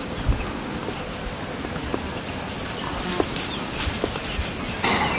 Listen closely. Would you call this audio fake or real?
real